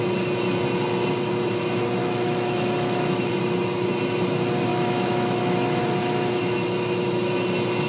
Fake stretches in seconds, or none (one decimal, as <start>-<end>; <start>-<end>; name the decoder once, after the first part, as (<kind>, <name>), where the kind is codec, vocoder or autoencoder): 2.0-3.3 (autoencoder, DAC-VAE); 4.7-5.8